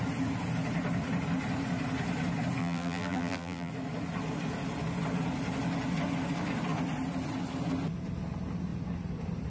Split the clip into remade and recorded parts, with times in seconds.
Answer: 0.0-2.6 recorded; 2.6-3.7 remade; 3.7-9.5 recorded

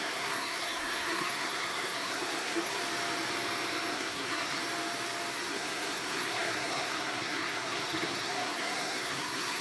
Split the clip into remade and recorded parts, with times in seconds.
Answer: 0.0-2.8 remade; 2.8-3.9 recorded; 3.9-4.6 remade; 4.6-5.5 recorded; 5.5-9.6 remade